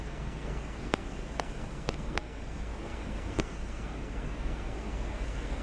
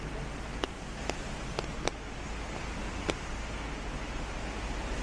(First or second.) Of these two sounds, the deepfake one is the first